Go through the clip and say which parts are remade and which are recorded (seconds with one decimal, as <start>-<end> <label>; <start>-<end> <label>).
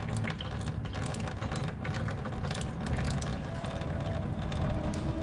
0.0-1.6 recorded; 1.6-2.7 remade; 2.7-3.3 recorded; 3.3-4.5 remade; 4.5-5.2 recorded